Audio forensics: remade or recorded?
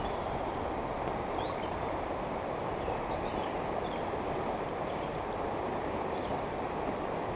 recorded